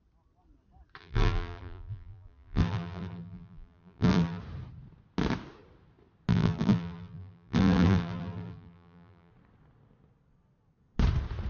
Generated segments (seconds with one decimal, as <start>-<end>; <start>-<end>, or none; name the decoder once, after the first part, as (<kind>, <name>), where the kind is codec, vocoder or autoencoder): 1.0-4.4 (vocoder, BigVGAN v2); 6.3-9.3